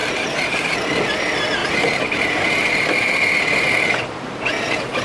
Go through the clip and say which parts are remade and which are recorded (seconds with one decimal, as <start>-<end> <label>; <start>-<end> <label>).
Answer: 0.0-0.7 remade; 0.7-1.6 recorded; 1.6-2.7 remade; 2.7-5.0 recorded